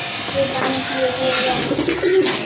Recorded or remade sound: recorded